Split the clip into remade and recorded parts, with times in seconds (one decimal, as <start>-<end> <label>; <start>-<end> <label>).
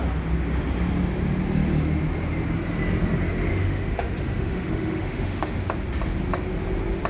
0.0-3.5 recorded; 3.5-5.6 remade; 5.6-7.1 recorded